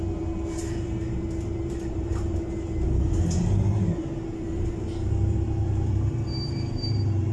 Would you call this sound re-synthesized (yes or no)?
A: yes